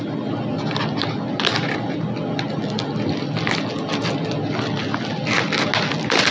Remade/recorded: recorded